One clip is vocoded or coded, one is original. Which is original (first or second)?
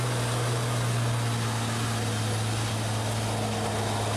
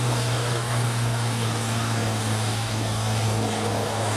first